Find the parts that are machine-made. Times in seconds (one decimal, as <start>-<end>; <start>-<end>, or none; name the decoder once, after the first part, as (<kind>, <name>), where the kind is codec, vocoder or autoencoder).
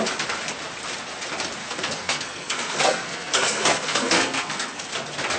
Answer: 1.6-4.8 (codec, SNAC)